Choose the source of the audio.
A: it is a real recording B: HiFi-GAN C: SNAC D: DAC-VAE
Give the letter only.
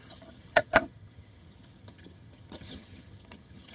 B